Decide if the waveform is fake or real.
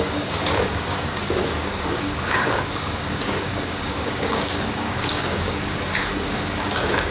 fake